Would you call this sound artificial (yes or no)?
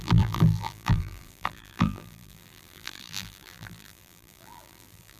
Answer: yes